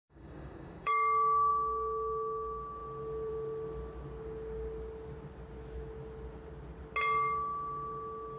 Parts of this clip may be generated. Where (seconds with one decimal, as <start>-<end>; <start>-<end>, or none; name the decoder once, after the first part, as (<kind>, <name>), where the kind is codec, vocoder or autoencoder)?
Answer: 0.0-1.5 (codec, DAC)